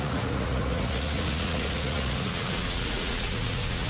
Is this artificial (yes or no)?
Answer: yes